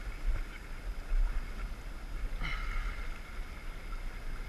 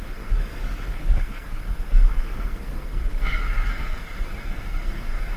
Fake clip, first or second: second